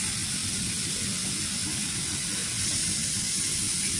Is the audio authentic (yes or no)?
yes